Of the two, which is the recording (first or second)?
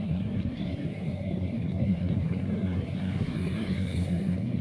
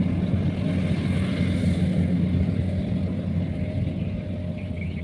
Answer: second